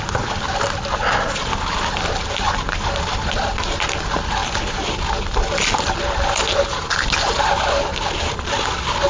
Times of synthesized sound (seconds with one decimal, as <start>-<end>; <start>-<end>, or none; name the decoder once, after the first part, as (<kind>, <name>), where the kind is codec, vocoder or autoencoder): 4.4-5.0 (vocoder, BigVGAN v2)